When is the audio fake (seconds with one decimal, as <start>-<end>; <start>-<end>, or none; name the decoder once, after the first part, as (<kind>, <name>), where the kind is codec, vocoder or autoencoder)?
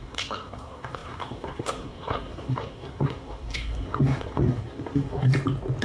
0.0-5.3 (codec, SNAC)